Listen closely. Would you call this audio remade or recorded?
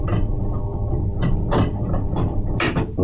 recorded